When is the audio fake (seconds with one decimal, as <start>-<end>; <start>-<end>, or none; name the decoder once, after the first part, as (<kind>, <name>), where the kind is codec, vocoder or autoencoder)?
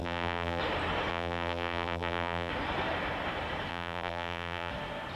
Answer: 0.0-0.6 (vocoder, BigVGAN v2); 1.1-2.5; 3.7-4.7